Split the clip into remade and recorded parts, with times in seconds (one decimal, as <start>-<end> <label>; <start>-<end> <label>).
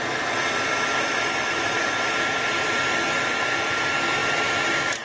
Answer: 0.0-0.4 recorded; 0.4-2.8 remade; 2.8-4.2 recorded; 4.2-5.0 remade